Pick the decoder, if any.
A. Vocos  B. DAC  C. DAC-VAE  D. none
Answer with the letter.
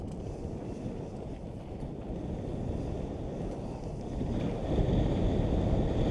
D